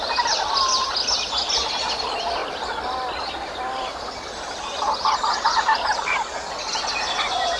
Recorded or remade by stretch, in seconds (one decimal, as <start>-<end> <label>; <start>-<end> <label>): 0.0-7.6 recorded